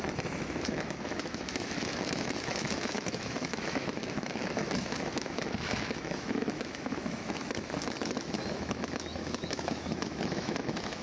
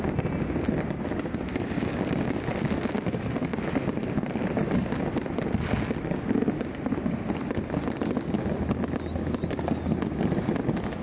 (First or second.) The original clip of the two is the second